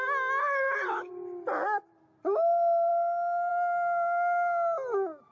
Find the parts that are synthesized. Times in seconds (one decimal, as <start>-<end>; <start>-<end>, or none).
0.4-1.1